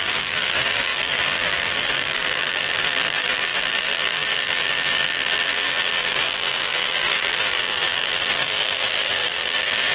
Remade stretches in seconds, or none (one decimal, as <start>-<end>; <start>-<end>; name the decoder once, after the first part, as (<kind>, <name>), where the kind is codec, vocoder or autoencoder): 0.0-9.9 (vocoder, BigVGAN v2)